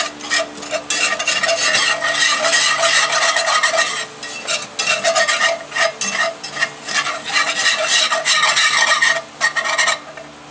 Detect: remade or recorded recorded